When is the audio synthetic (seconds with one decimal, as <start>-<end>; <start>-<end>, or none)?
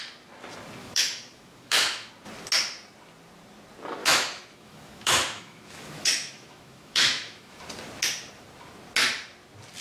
0.8-2.1; 4.0-7.6